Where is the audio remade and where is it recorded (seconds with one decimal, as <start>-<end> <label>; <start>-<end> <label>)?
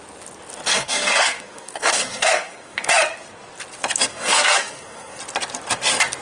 0.0-0.7 recorded; 0.7-2.9 remade; 2.9-4.1 recorded; 4.1-5.2 remade; 5.2-6.2 recorded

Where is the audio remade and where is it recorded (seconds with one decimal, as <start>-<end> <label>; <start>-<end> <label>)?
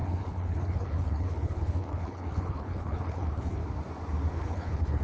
0.0-3.6 remade; 3.6-4.3 recorded; 4.3-5.0 remade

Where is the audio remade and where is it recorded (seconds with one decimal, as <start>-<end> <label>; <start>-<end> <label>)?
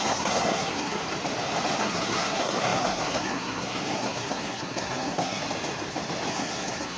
0.0-1.0 remade; 1.0-1.8 recorded; 1.8-5.4 remade; 5.4-6.3 recorded; 6.3-7.0 remade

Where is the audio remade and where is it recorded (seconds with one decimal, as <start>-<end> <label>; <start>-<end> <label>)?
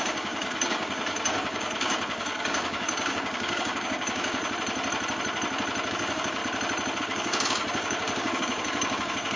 0.0-4.4 remade; 4.4-5.9 recorded; 5.9-6.4 remade; 6.4-7.0 recorded; 7.0-9.4 remade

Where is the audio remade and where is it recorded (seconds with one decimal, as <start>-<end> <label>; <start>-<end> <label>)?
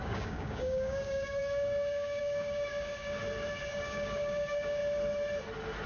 0.0-3.2 remade; 3.2-3.7 recorded; 3.7-4.8 remade; 4.8-5.9 recorded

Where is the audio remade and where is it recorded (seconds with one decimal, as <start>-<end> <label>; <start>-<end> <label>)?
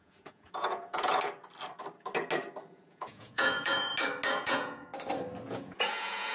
0.0-1.1 remade; 1.1-2.7 recorded; 2.7-3.9 remade; 3.9-4.4 recorded; 4.4-4.9 remade; 4.9-5.5 recorded; 5.5-6.3 remade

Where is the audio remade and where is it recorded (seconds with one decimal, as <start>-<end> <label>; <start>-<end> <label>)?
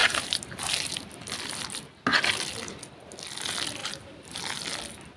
0.0-0.9 remade; 0.9-3.8 recorded; 3.8-4.4 remade; 4.4-5.2 recorded